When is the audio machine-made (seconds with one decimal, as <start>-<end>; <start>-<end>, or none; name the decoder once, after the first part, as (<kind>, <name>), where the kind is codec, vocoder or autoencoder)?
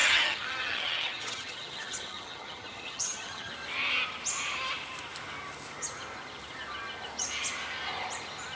0.0-3.5 (vocoder, HiFi-GAN)